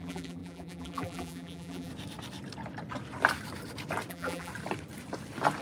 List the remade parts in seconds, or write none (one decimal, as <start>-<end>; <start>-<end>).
0.0-1.9; 4.1-4.5